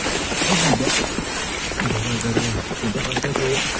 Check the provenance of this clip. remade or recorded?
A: recorded